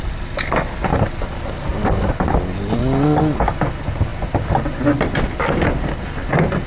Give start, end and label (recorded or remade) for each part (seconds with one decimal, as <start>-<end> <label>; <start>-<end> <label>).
0.0-6.7 recorded